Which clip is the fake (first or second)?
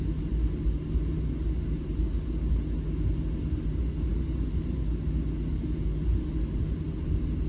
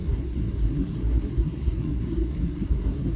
second